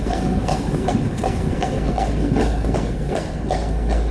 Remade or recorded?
remade